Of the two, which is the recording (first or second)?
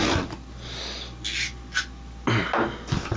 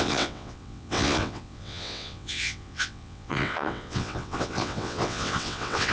first